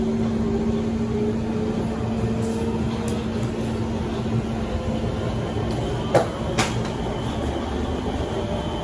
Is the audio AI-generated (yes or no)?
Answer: no